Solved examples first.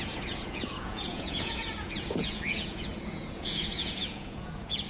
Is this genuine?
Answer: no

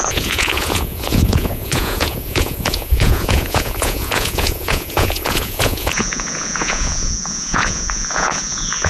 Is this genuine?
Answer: no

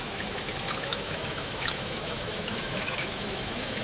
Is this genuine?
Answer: no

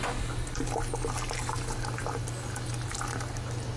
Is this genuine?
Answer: yes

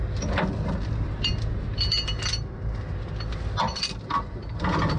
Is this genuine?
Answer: yes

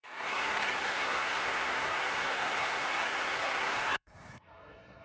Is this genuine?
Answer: no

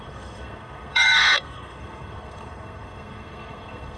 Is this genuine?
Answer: no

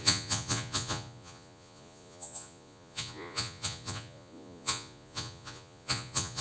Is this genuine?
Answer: no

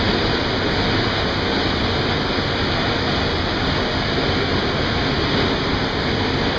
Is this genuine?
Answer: yes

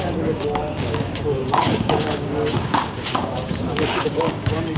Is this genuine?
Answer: no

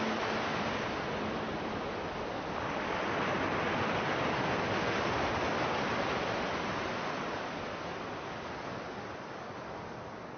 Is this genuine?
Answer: yes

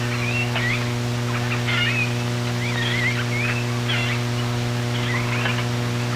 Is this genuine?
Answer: yes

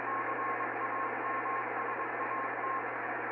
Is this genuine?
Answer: yes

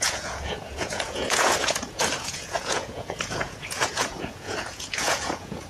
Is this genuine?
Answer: no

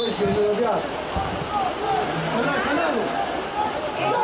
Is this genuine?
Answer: yes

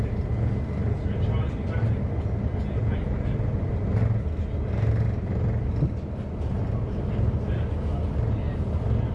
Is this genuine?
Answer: yes